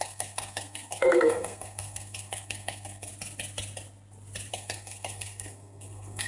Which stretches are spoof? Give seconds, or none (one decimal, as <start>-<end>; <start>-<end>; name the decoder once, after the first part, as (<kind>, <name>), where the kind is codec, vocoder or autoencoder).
0.0-3.1 (codec, SNAC); 4.5-6.3